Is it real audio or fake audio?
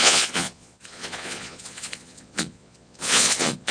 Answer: fake